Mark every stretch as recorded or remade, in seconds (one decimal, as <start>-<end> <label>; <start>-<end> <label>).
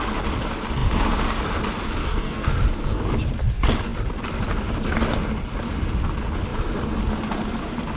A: 0.0-2.0 recorded; 2.0-2.5 remade; 2.5-8.0 recorded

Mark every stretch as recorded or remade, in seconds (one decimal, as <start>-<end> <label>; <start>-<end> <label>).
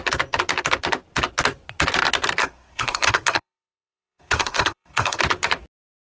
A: 0.0-2.4 recorded; 2.4-5.2 remade; 5.2-6.0 recorded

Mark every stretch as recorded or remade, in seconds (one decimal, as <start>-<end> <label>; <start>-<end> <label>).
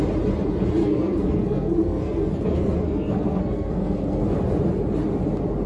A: 0.0-0.8 recorded; 0.8-4.2 remade; 4.2-5.7 recorded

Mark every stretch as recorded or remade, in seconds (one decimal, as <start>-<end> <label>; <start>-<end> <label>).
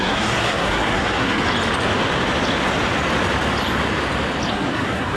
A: 0.0-1.4 remade; 1.4-4.5 recorded; 4.5-5.2 remade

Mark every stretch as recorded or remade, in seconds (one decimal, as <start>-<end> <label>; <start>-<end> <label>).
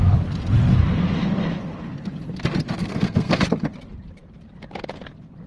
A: 0.0-2.8 recorded; 2.8-3.4 remade; 3.4-5.5 recorded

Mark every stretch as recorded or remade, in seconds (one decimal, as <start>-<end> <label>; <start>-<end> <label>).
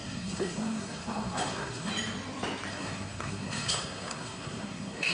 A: 0.0-1.9 remade; 1.9-2.7 recorded; 2.7-5.1 remade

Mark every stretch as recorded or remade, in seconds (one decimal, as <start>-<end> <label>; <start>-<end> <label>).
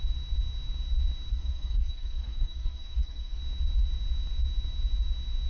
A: 0.0-1.3 recorded; 1.3-3.4 remade; 3.4-5.5 recorded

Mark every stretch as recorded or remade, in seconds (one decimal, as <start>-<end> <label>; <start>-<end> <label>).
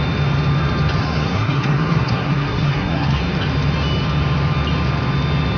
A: 0.0-1.0 recorded; 1.0-3.2 remade; 3.2-5.6 recorded